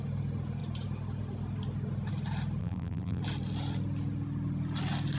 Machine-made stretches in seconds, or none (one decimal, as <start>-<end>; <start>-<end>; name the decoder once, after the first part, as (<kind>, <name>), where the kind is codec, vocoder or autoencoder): 2.6-3.2 (vocoder, BigVGAN v2)